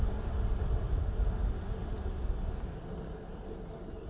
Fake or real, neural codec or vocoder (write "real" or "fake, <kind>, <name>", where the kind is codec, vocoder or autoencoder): real